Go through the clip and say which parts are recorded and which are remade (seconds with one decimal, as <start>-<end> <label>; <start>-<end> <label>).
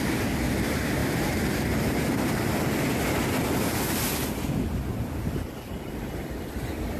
0.0-1.0 recorded; 1.0-2.7 remade; 2.7-4.9 recorded; 4.9-5.7 remade; 5.7-7.0 recorded